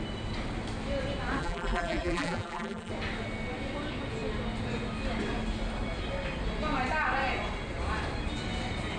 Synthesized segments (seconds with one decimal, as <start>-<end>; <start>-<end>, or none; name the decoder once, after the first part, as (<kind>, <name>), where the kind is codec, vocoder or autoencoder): 1.4-2.9 (vocoder, BigVGAN v2)